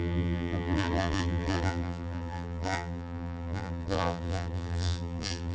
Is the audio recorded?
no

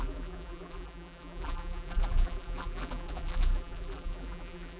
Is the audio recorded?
no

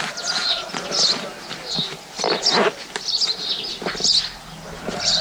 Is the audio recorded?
yes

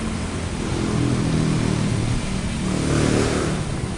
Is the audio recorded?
yes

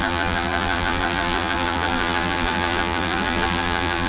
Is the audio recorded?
no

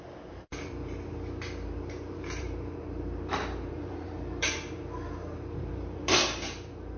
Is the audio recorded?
no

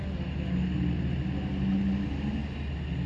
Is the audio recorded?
yes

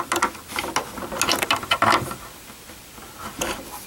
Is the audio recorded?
yes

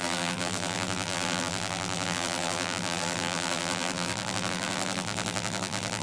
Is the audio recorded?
no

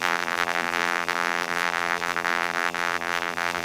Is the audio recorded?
no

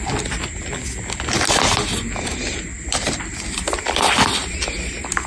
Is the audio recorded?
yes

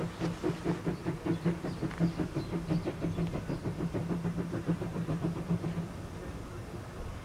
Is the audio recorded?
yes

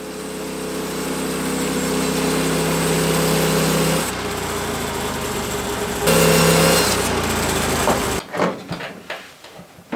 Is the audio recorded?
yes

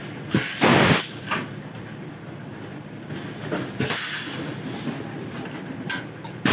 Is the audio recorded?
no